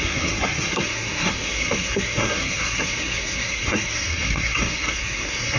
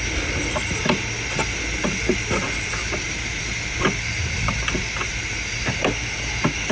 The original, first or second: second